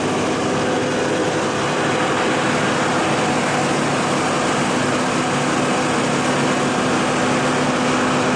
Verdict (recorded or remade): recorded